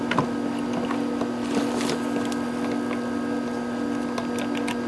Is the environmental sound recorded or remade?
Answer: recorded